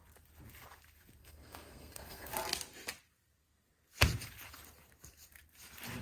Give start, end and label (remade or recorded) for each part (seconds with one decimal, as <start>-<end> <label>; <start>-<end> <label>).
0.0-1.2 recorded; 1.2-2.3 remade; 2.3-6.0 recorded